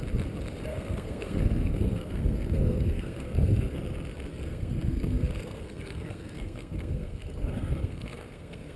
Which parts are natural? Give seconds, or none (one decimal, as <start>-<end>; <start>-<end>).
0.0-0.7; 3.8-4.3